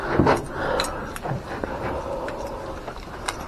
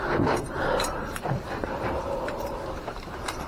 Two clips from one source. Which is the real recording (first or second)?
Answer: first